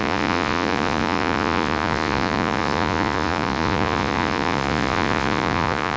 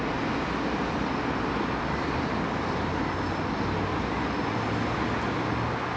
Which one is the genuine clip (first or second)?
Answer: second